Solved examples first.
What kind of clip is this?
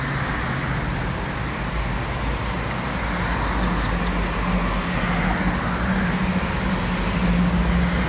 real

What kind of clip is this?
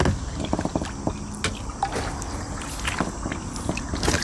real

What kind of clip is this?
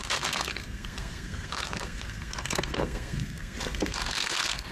fake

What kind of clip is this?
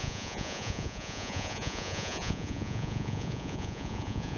fake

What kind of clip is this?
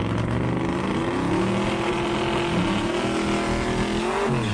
real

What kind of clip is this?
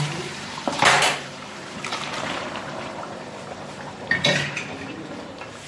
fake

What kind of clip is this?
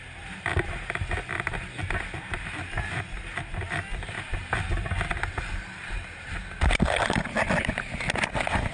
real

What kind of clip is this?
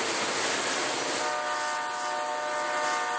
real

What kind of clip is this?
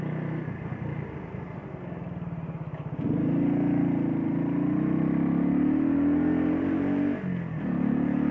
real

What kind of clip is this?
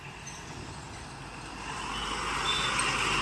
real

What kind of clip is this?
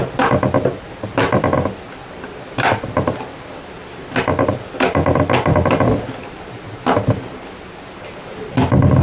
real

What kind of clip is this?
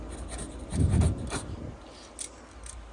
real